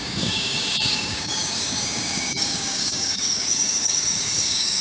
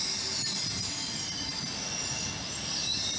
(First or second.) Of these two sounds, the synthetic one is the first